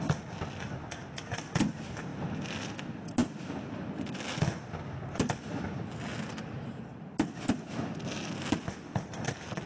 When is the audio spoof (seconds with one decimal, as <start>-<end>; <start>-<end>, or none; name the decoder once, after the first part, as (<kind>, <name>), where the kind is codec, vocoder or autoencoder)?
none